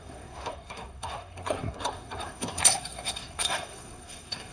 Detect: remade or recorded remade